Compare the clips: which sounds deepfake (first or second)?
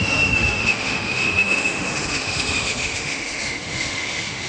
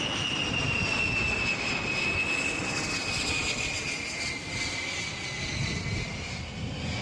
first